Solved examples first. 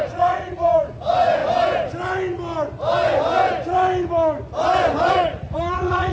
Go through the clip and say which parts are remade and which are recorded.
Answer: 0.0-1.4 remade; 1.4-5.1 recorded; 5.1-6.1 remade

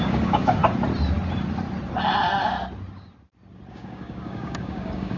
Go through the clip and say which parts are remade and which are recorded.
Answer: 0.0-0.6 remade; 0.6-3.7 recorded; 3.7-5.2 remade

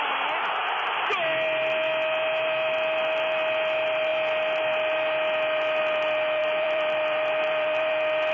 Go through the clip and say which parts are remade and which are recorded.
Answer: 0.0-6.4 recorded; 6.4-7.9 remade; 7.9-8.3 recorded